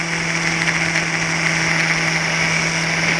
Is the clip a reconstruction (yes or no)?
no